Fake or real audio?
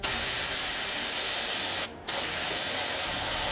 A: real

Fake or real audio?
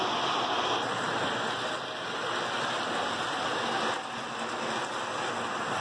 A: real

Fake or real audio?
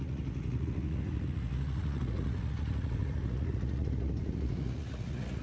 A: fake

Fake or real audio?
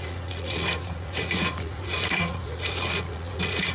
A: fake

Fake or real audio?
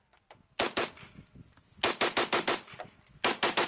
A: real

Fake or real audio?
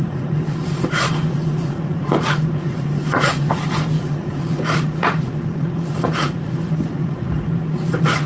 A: fake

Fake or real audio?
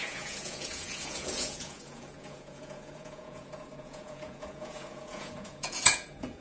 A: fake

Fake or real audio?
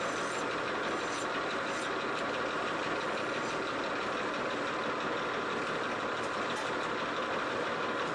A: real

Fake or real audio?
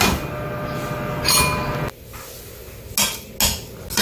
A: real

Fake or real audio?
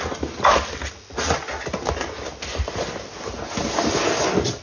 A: real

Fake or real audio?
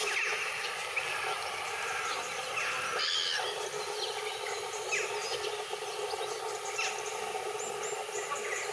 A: real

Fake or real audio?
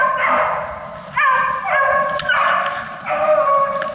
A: real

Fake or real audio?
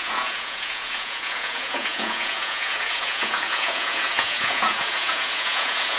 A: fake